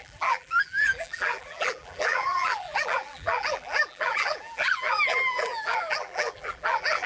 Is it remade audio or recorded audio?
remade